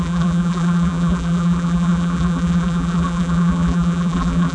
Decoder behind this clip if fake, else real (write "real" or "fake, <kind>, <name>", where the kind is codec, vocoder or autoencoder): fake, vocoder, BigVGAN v2